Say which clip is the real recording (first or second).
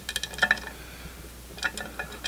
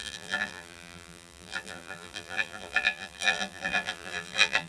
first